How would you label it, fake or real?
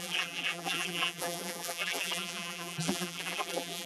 fake